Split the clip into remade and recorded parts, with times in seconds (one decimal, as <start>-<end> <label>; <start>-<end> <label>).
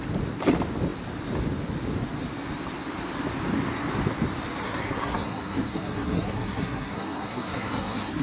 0.0-4.6 recorded; 4.6-8.2 remade